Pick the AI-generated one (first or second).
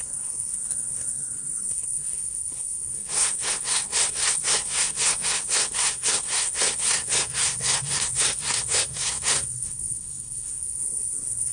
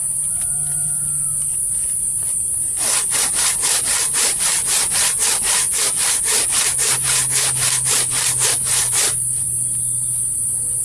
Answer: first